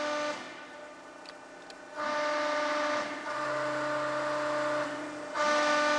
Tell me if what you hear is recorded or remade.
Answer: recorded